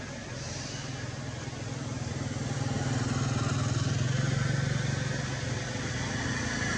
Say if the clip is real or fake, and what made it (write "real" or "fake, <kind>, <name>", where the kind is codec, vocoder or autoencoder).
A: real